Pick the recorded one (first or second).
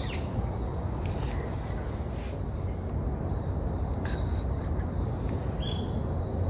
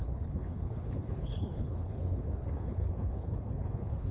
first